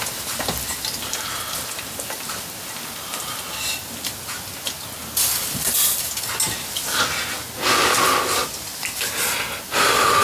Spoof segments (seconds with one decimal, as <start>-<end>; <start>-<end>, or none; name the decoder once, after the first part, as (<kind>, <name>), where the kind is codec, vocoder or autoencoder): 0.7-1.8 (vocoder, BigVGAN v2)